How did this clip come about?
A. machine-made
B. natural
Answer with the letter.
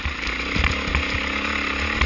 B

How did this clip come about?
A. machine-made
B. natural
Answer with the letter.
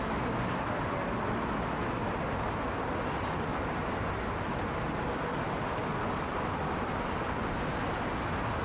B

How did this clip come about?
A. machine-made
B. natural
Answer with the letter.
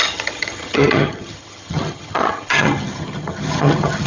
A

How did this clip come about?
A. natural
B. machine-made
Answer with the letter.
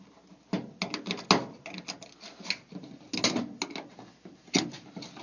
A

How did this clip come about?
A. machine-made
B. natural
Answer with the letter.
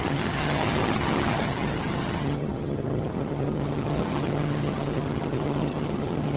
A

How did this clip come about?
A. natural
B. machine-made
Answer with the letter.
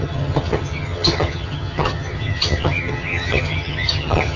B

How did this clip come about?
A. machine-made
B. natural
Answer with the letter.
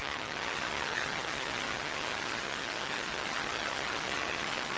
A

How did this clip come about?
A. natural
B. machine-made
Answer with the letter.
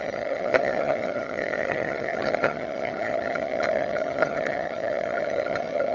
B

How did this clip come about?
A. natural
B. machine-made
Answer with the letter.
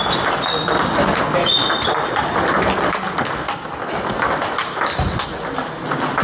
A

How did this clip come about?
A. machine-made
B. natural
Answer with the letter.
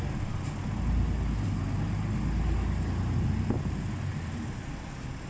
B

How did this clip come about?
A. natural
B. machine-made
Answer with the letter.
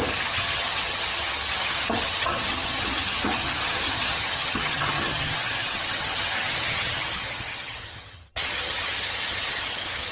B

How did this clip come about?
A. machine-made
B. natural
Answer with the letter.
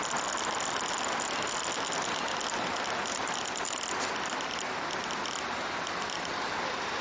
B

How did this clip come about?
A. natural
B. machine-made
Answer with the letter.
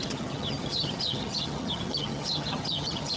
B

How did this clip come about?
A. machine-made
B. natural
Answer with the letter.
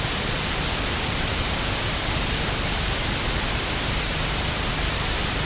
B